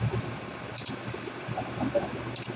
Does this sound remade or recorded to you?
recorded